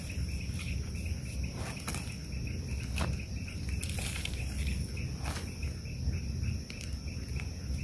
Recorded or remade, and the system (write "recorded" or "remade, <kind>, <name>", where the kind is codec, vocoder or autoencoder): recorded